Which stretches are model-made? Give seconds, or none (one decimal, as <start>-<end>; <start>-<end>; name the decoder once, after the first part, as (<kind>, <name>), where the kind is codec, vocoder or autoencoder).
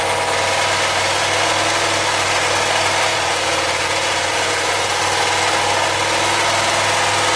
3.1-5.0 (vocoder, Vocos)